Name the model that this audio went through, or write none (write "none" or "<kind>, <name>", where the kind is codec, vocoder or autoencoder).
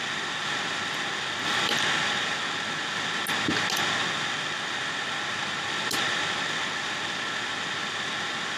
none